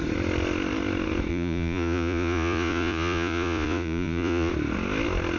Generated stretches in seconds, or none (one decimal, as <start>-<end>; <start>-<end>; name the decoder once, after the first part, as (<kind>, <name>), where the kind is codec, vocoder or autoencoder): 1.3-4.5 (vocoder, Vocos)